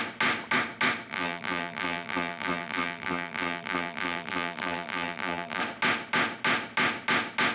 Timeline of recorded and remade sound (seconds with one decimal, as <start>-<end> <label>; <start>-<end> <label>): 0.0-1.1 recorded; 1.1-5.6 remade; 5.6-7.5 recorded